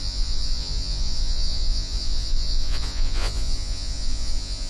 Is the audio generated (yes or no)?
yes